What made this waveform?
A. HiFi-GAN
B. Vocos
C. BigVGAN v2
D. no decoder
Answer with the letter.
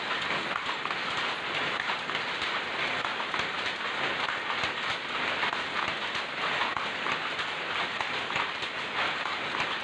D